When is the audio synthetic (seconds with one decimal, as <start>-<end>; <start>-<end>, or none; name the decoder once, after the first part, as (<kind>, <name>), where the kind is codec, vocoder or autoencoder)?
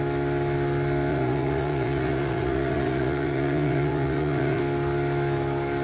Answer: 1.1-4.6 (vocoder, Vocos)